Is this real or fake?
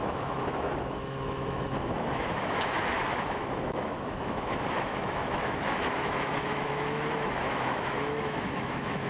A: fake